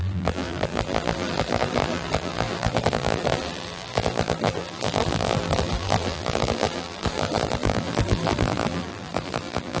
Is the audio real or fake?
fake